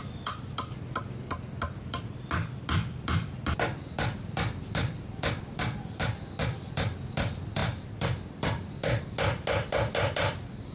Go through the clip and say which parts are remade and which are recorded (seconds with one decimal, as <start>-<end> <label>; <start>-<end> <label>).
0.0-10.7 recorded